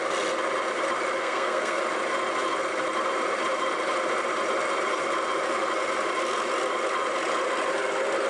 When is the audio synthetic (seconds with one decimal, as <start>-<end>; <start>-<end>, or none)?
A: 1.2-1.8